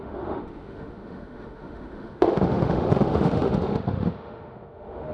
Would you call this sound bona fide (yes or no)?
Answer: no